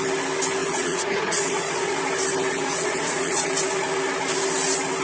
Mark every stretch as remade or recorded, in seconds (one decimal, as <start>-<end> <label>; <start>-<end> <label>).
0.0-0.6 recorded; 0.6-2.0 remade; 2.0-2.5 recorded; 2.5-3.5 remade; 3.5-5.0 recorded